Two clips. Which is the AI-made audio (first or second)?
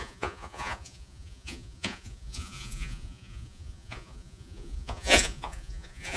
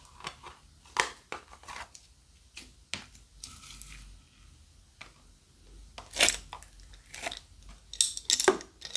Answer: first